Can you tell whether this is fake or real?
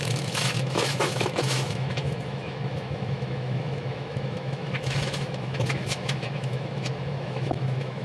fake